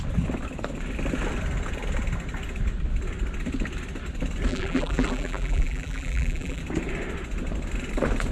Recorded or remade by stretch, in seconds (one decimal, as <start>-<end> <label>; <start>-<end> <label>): 0.0-4.5 recorded; 4.5-6.6 remade; 6.6-8.3 recorded